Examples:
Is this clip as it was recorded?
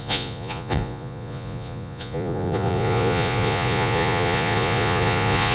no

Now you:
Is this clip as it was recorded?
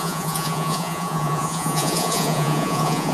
no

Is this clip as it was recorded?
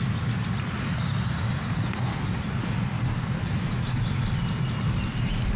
yes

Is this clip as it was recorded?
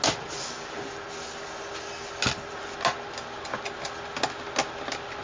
yes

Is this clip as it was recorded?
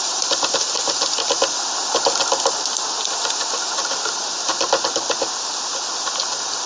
yes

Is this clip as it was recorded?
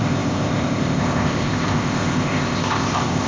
no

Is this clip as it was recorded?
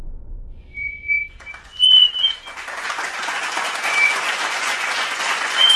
no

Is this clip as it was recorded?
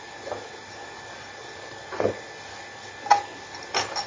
yes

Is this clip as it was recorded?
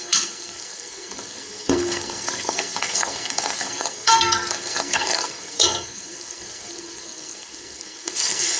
no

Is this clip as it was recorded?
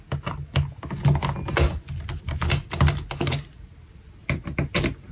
yes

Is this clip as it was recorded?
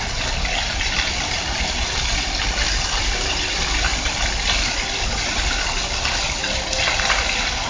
yes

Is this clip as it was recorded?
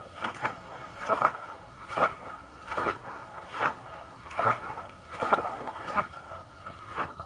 no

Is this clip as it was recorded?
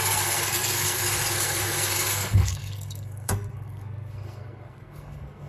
no